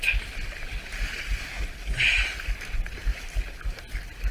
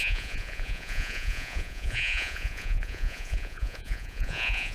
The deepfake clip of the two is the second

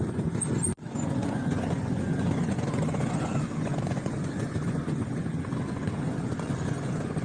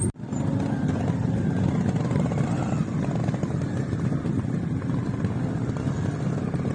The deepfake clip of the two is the first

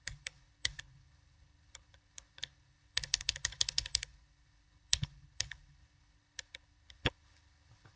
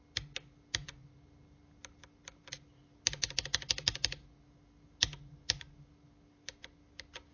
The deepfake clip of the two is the first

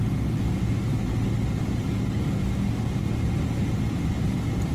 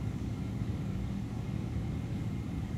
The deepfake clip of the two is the second